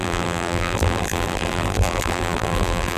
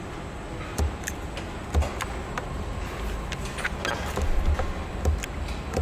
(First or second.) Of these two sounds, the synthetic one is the first